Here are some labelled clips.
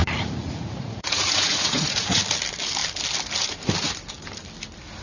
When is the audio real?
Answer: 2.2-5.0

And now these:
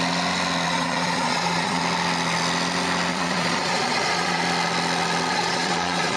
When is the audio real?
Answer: 0.0-0.7; 1.8-3.1; 4.4-5.3

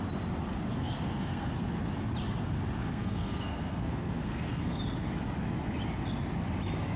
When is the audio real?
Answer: 0.0-0.7; 1.5-2.8; 4.8-7.0

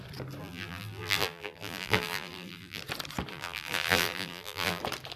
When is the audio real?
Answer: 0.0-0.4; 2.8-3.3; 4.8-5.2

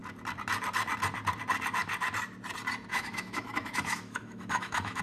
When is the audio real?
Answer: 0.0-2.9

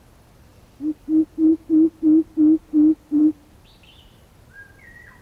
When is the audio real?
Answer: 0.0-0.5; 1.5-5.2